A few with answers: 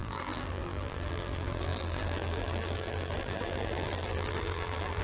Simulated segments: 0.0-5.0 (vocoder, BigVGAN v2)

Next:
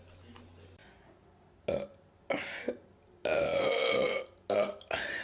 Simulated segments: none

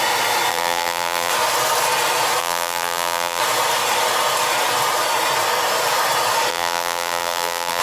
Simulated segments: 0.5-1.3 (vocoder, BigVGAN v2); 2.4-3.4; 6.5-7.8